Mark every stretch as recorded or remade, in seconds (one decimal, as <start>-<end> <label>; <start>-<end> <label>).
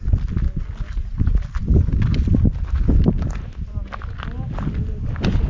0.0-5.5 recorded